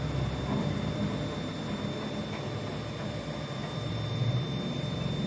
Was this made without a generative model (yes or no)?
no